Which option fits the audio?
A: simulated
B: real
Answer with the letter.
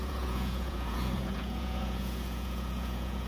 A